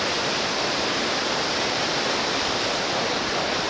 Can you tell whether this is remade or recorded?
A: remade